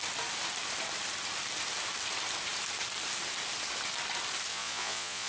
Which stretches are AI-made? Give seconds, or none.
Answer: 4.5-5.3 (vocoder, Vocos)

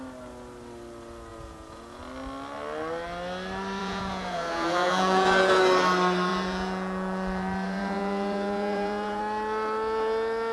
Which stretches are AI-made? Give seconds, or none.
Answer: 1.3-2.0 (vocoder, Vocos); 3.8-5.6; 6.3-9.2

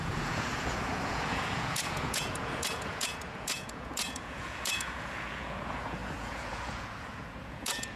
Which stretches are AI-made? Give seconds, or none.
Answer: 0.0-8.0 (vocoder, Vocos)

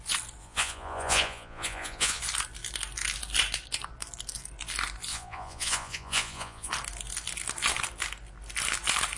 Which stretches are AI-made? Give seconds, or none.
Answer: 0.4-2.2 (vocoder, Vocos); 5.1-6.7